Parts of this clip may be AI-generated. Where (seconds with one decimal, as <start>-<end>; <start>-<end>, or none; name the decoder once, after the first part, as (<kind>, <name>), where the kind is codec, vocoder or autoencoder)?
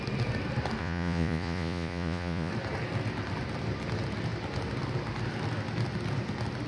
0.8-2.5 (vocoder, Vocos)